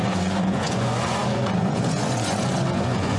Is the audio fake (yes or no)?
yes